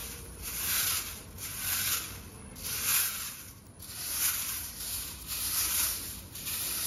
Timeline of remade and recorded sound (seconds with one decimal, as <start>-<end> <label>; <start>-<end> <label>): 0.0-1.1 remade; 1.1-2.9 recorded; 2.9-6.9 remade